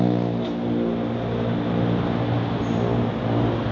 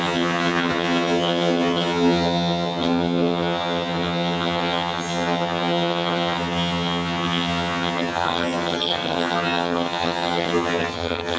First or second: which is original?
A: first